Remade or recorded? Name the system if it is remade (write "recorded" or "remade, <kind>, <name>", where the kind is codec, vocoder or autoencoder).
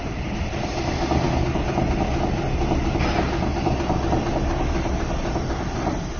recorded